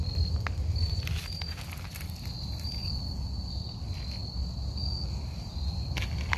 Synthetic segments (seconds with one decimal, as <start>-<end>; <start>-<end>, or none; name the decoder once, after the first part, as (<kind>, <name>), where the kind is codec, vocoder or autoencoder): none